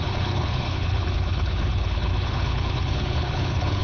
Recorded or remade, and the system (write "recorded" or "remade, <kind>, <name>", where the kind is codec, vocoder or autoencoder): remade, codec, HILCodec